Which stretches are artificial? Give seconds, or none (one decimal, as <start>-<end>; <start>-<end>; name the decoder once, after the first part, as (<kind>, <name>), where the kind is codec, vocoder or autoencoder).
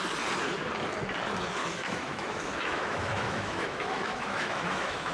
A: 1.6-5.1 (autoencoder, DAC-VAE)